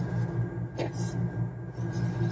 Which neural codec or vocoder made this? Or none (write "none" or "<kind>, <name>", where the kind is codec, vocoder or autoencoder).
none